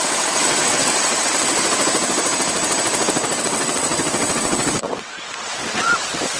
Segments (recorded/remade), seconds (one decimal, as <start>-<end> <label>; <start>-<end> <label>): 0.0-1.5 remade; 1.5-3.4 recorded; 3.4-6.4 remade